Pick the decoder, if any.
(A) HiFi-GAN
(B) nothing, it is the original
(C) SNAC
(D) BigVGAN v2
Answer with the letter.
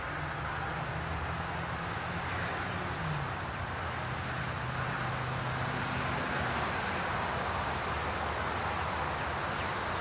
B